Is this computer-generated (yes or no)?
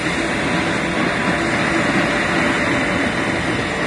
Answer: no